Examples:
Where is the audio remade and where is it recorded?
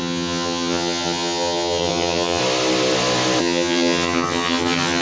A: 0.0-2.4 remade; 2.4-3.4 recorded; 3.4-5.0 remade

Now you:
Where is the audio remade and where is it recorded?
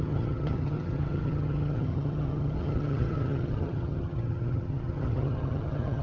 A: 0.0-6.0 remade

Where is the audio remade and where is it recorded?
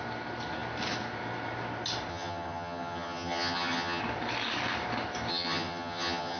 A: 0.0-2.1 recorded; 2.1-4.0 remade; 4.0-5.3 recorded; 5.3-6.4 remade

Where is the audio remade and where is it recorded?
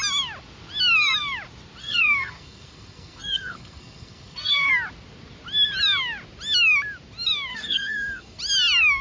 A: 0.0-1.8 recorded; 1.8-4.7 remade; 4.7-7.5 recorded; 7.5-8.4 remade; 8.4-9.0 recorded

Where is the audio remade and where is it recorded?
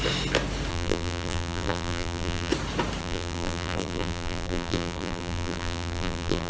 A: 0.0-0.7 recorded; 0.7-2.5 remade; 2.5-3.0 recorded; 3.0-6.5 remade